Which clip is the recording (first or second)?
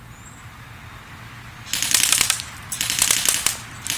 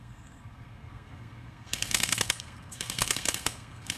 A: first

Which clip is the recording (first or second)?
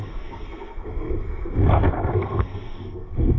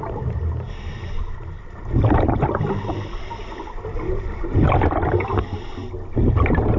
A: second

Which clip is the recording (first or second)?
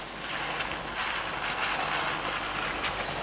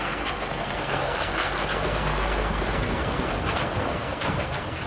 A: first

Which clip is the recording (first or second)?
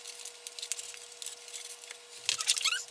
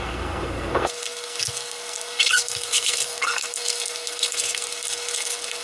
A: first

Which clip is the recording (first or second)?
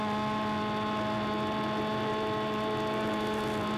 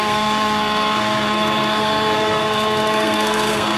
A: first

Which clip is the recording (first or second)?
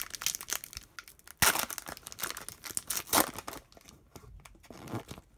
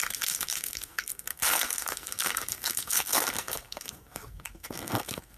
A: first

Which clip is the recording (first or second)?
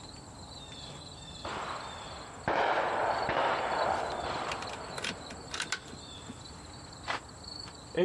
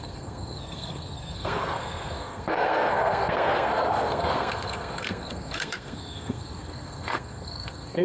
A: first